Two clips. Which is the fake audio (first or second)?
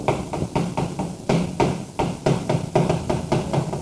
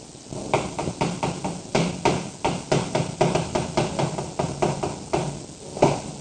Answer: first